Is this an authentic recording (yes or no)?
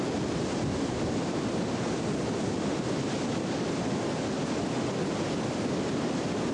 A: yes